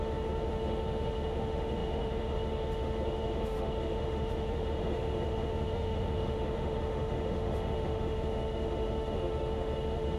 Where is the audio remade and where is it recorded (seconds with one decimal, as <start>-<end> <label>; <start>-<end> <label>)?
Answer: 0.0-10.2 remade